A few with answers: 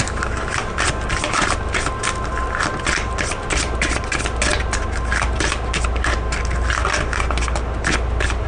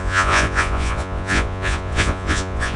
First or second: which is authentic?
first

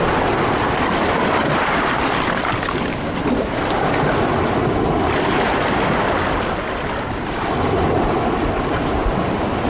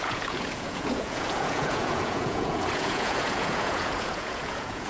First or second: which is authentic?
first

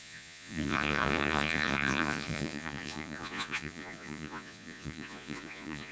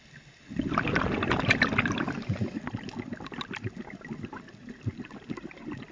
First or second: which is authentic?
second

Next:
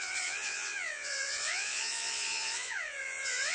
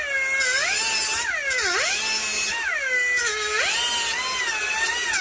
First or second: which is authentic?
second